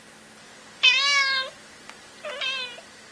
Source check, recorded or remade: recorded